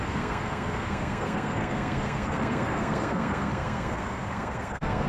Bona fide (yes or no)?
no